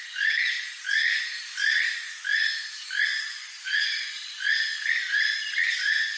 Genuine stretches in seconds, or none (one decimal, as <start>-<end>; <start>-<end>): 0.0-6.2